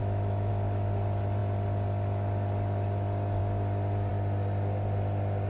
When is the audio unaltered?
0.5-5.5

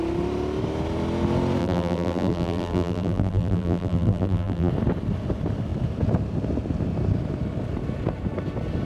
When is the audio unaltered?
0.0-1.6; 4.7-8.9

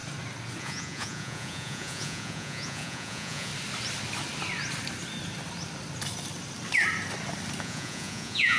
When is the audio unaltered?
0.0-0.6; 3.5-7.6

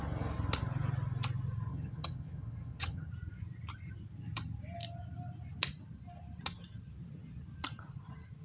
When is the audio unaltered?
0.0-1.7; 3.1-8.4

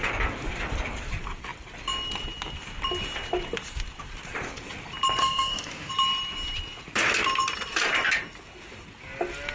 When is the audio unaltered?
0.0-5.2; 5.9-9.5

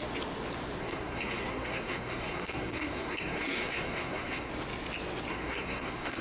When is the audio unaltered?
0.0-0.8; 4.5-5.3

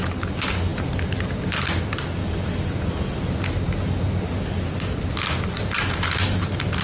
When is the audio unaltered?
0.0-6.8